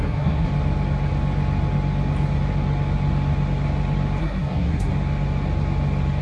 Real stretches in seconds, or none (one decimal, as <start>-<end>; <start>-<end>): 0.5-4.2; 4.9-6.2